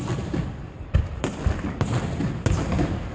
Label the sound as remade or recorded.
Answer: recorded